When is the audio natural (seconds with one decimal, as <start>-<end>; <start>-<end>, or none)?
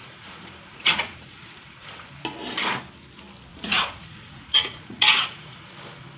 2.1-3.5; 5.7-6.2